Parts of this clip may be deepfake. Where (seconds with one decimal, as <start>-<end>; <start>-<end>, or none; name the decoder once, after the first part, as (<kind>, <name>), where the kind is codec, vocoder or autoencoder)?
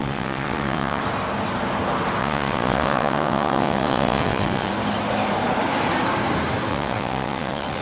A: 0.0-1.0 (vocoder, WaveNeXt); 2.2-4.7; 6.7-7.8